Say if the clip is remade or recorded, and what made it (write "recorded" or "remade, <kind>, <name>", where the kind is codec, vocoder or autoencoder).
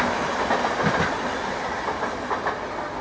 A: recorded